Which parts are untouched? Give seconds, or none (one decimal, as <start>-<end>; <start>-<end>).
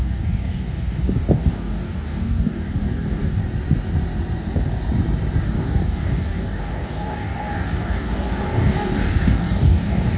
3.4-5.4